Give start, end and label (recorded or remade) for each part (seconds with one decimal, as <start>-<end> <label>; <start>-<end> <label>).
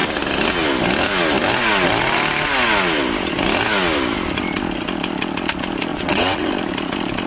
0.0-5.9 recorded; 5.9-6.5 remade; 6.5-7.3 recorded